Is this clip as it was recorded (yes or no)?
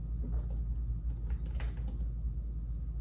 yes